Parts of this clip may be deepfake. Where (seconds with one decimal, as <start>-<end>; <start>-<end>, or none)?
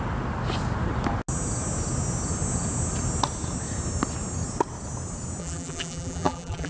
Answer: 5.4-6.7